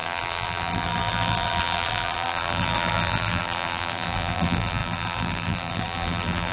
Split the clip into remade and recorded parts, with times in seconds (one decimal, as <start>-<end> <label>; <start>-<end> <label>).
0.0-6.5 remade